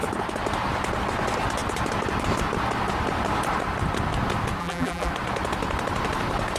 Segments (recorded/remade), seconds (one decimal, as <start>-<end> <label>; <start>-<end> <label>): 0.0-4.6 recorded; 4.6-5.1 remade; 5.1-6.6 recorded